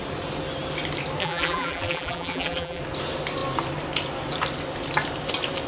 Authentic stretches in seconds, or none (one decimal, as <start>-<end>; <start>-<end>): 0.0-1.2; 2.8-5.7